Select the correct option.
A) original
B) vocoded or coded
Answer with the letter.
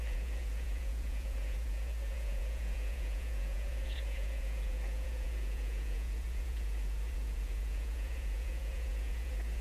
B